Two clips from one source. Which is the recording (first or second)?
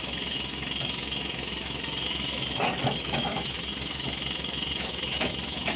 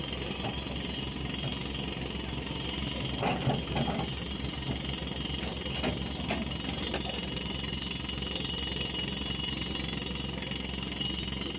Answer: second